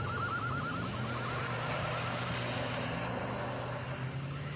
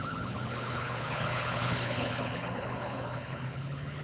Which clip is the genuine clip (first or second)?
first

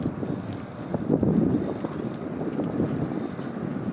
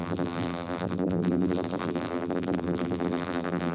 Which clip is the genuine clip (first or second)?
first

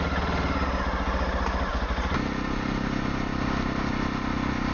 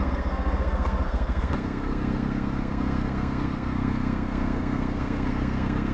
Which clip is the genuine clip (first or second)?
first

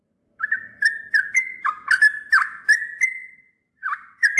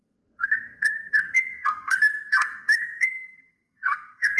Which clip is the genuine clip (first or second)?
first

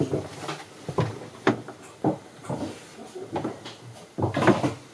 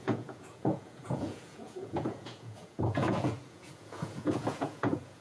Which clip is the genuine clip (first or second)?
first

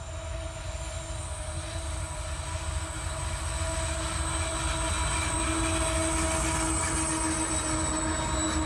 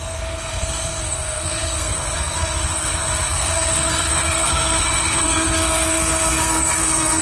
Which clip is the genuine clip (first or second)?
first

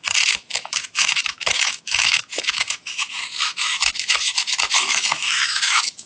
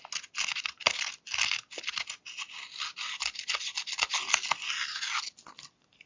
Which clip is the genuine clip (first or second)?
second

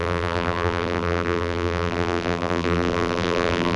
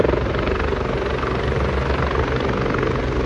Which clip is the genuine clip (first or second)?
second